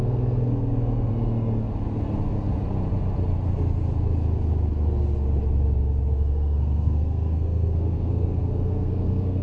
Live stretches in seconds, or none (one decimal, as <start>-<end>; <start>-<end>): 1.1-6.1